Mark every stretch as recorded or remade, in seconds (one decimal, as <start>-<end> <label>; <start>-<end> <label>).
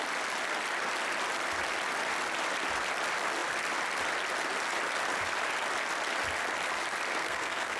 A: 0.0-7.2 recorded; 7.2-7.8 remade